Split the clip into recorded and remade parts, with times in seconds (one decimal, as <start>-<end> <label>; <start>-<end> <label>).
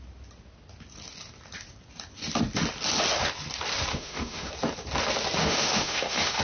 0.0-3.9 recorded; 3.9-4.5 remade; 4.5-5.4 recorded; 5.4-6.4 remade